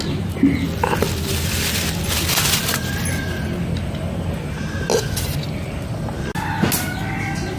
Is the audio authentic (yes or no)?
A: yes